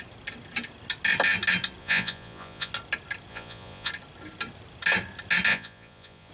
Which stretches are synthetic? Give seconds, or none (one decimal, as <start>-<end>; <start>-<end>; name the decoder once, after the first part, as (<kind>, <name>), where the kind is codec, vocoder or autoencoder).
1.8-2.7 (vocoder, Vocos); 3.3-3.9; 5.5-6.3